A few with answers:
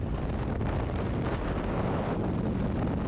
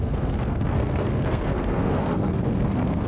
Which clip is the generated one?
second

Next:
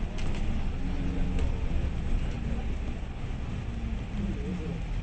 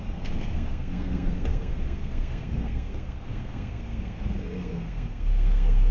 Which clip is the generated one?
second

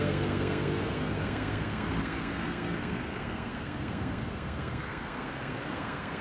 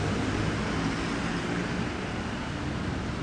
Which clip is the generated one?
first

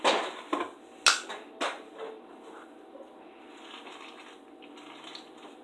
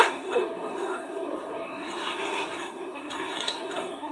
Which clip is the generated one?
second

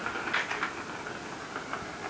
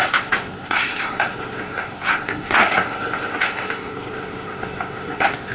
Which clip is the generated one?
second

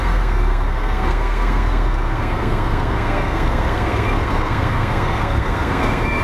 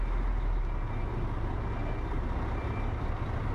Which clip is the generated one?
first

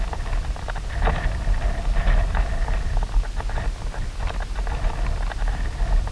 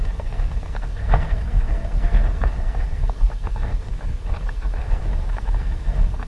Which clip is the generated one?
second